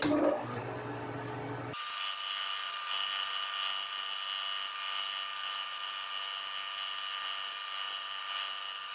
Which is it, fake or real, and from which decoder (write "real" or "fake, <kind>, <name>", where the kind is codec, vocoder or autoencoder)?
real